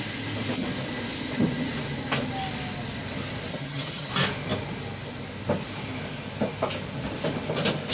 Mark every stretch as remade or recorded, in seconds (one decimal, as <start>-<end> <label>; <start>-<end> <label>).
0.0-3.5 recorded; 3.5-4.1 remade; 4.1-7.9 recorded